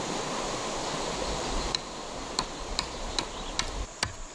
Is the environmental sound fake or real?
real